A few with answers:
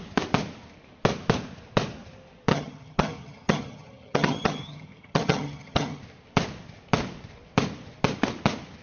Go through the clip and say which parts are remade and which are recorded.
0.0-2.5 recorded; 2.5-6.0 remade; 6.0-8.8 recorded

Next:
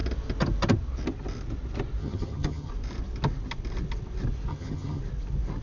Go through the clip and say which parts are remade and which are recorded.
0.0-2.0 recorded; 2.0-2.7 remade; 2.7-4.5 recorded; 4.5-5.0 remade; 5.0-5.6 recorded

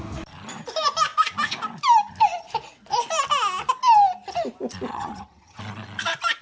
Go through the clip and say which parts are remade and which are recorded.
0.0-4.9 recorded; 4.9-5.6 remade; 5.6-6.4 recorded